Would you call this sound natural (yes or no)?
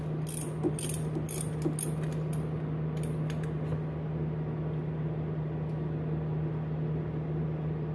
yes